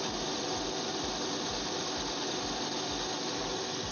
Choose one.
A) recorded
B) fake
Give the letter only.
A